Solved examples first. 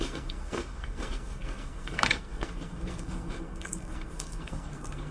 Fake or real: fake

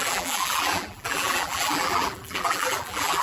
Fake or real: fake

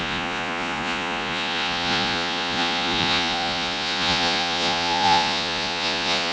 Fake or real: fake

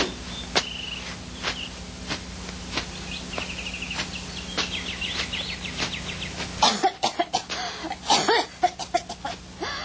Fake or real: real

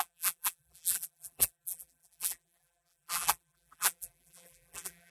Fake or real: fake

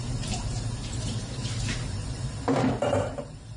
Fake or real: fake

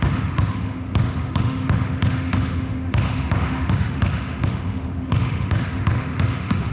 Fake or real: fake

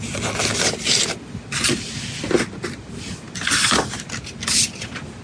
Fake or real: real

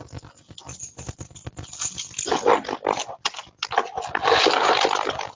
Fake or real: real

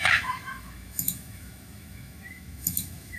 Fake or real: fake